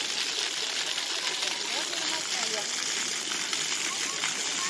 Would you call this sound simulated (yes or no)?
no